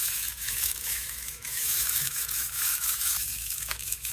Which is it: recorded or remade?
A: remade